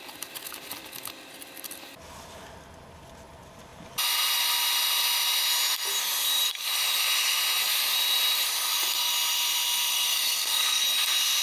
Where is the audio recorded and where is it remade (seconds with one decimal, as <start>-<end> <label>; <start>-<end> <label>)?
0.0-9.9 recorded; 9.9-10.8 remade; 10.8-11.4 recorded